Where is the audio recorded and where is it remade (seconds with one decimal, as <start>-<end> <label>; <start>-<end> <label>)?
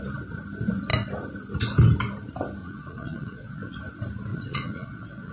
0.0-2.6 recorded; 2.6-3.8 remade; 3.8-4.3 recorded; 4.3-5.3 remade